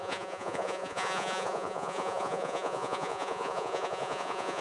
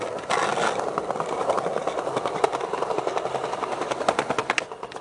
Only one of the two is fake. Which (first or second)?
first